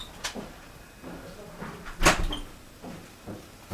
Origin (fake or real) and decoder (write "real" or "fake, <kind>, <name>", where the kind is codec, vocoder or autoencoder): real